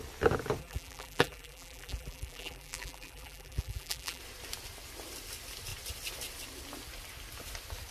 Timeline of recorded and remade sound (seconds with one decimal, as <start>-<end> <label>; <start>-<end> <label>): 0.0-0.6 recorded; 0.6-4.2 remade; 4.2-7.9 recorded